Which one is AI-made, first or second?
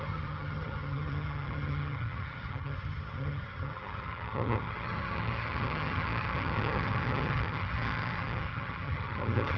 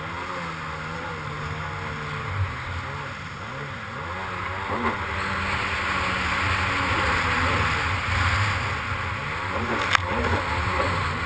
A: first